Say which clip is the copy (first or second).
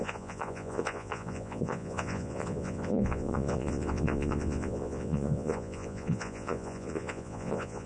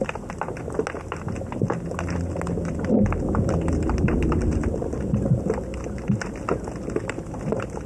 first